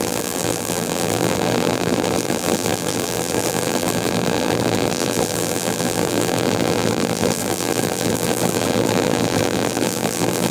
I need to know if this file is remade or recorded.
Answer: remade